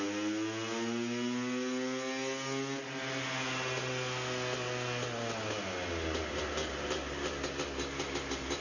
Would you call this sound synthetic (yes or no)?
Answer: no